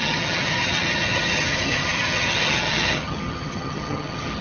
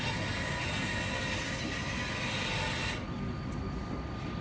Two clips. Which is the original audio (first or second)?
second